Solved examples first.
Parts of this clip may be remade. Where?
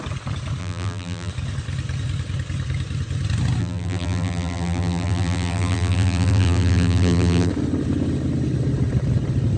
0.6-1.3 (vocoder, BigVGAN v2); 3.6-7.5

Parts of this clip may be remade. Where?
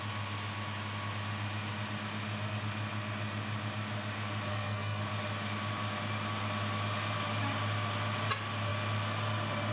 4.5-5.0 (codec, SNAC)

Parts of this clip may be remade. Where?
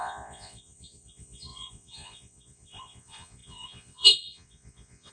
0.0-5.1 (vocoder, Vocos)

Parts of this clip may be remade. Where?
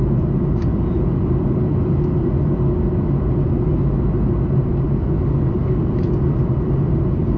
none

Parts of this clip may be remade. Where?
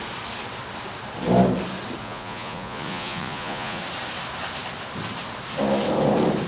2.0-3.8 (vocoder, Vocos)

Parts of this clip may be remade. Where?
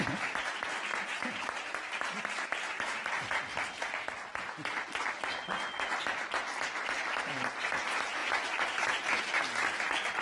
0.9-2.2 (vocoder, BigVGAN v2); 2.7-3.3; 8.2-9.4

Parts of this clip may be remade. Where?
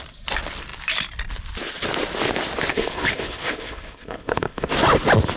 2.7-4.7 (codec, HILCodec)